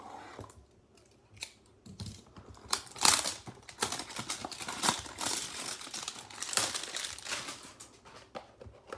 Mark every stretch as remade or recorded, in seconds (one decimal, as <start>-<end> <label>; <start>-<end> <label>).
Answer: 0.0-4.4 recorded; 4.4-6.1 remade; 6.1-9.0 recorded